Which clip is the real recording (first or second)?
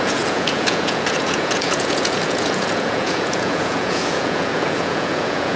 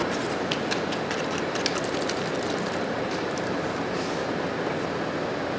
second